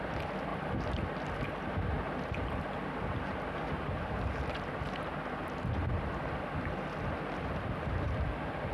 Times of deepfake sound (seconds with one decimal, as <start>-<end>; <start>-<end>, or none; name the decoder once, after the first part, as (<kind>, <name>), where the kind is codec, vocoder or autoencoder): none